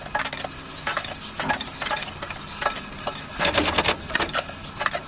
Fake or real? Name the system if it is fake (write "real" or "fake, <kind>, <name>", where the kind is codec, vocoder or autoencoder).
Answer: real